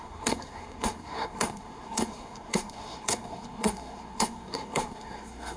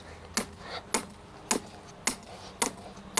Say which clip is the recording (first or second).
second